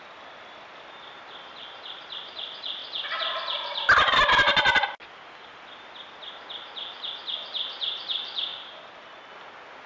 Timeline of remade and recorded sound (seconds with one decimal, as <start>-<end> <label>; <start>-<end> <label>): 0.0-9.9 recorded